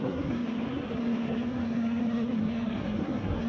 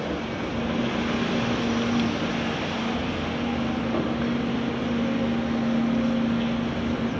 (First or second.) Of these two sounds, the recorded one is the second